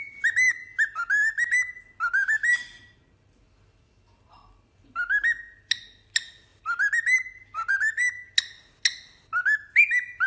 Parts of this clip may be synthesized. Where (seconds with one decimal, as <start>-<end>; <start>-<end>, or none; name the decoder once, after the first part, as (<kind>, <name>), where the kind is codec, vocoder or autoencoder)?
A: none